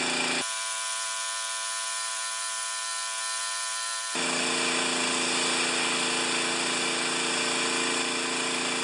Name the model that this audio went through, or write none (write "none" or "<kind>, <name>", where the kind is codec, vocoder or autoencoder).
none